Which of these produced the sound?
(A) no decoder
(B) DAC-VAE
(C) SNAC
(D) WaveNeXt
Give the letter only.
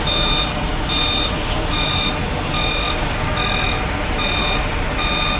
A